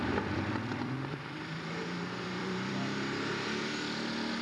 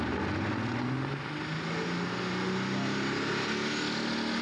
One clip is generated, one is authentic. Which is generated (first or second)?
first